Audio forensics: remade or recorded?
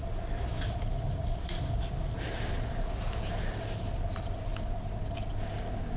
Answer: recorded